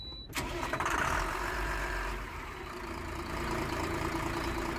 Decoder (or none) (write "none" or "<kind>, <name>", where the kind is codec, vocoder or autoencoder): vocoder, BigVGAN v2